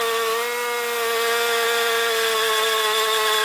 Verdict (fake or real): real